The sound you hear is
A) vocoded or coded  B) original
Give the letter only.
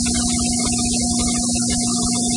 B